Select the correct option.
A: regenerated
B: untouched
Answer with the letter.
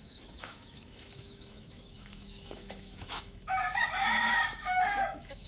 A